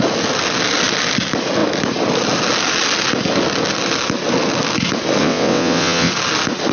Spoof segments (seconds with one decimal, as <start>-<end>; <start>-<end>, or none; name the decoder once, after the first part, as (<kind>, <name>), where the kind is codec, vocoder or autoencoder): 5.2-6.1 (vocoder, WaveNeXt)